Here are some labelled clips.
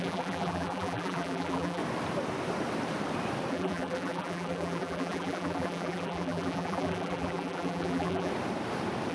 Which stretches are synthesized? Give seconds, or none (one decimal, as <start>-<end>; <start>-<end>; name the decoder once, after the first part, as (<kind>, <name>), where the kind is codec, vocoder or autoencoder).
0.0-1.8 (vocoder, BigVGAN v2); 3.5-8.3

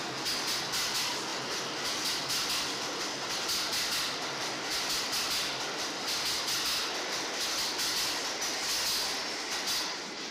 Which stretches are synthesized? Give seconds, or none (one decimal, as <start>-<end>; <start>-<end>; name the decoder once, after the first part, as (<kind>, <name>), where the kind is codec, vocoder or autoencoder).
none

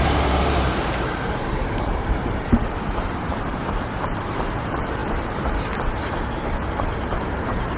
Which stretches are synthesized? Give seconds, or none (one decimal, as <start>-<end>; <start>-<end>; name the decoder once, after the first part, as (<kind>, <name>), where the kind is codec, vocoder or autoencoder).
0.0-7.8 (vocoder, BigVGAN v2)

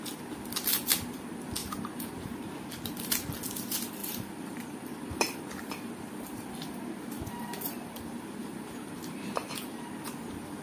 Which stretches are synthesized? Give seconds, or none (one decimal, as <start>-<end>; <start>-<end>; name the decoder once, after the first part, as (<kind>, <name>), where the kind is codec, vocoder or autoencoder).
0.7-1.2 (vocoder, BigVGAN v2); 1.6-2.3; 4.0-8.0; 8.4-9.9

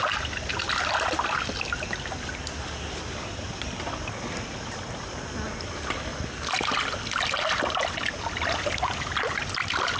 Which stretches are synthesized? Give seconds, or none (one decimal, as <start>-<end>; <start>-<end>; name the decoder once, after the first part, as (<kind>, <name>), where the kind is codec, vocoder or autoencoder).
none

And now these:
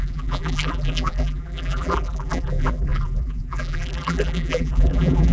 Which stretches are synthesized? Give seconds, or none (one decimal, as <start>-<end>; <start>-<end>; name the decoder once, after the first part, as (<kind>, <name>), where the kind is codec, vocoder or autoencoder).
0.0-5.3 (vocoder, BigVGAN v2)

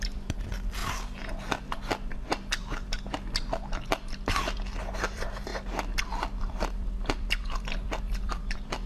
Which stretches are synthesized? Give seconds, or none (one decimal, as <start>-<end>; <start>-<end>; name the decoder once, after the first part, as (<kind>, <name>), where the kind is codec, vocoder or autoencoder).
0.0-0.8 (vocoder, BigVGAN v2); 5.0-5.5; 6.0-8.9

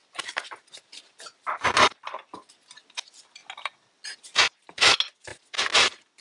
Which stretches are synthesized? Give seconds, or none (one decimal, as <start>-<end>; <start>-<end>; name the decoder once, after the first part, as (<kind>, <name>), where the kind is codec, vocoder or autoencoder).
0.0-1.1 (vocoder, BigVGAN v2)